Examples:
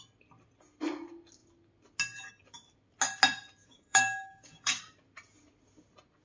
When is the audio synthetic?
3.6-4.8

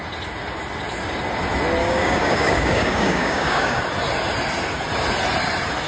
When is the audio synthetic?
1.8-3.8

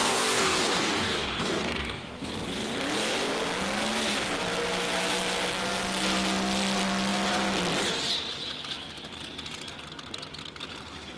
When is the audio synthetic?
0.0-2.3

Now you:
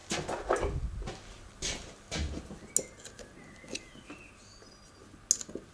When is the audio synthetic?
none

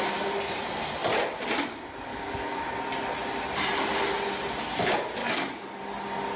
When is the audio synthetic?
2.1-2.6; 5.2-5.8

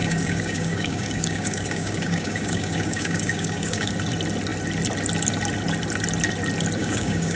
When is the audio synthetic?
0.0-3.9; 6.8-7.4

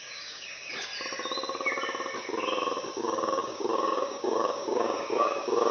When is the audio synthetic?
0.0-0.9; 3.0-5.7

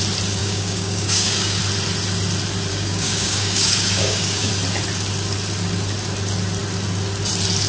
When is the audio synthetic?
0.4-1.6; 2.7-4.5